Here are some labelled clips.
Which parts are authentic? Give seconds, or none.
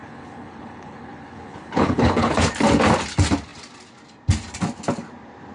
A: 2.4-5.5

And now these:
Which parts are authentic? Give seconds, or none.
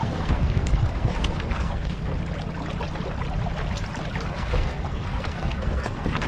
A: 2.1-4.3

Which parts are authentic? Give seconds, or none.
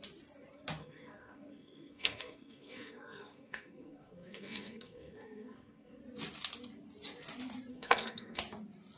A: 0.0-0.8; 6.0-7.7; 8.4-9.0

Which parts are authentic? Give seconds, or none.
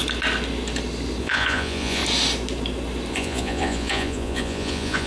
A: 0.0-1.2; 2.0-3.1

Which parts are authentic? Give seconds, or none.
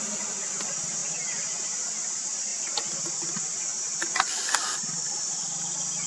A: 0.0-3.7; 5.5-6.1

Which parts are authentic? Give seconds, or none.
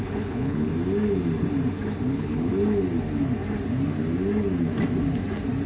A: 0.7-2.0; 2.5-5.7